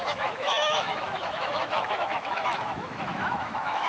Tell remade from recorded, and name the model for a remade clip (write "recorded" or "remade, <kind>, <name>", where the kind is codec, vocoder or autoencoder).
remade, autoencoder, DAC-VAE